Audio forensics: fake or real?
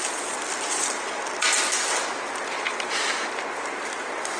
real